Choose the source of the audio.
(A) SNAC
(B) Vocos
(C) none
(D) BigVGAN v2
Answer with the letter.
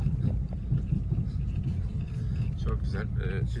C